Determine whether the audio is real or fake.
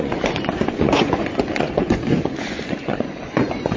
fake